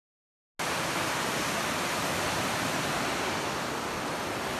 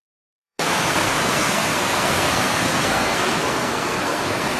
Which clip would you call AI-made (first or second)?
second